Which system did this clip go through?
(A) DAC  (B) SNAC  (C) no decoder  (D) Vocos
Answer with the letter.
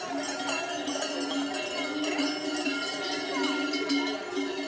C